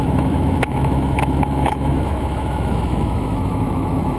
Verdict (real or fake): fake